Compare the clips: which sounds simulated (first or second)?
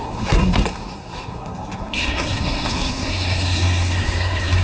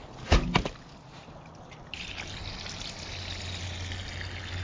first